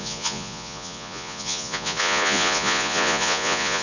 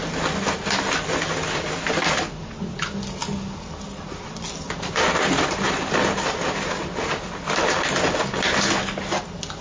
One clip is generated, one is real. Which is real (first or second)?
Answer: second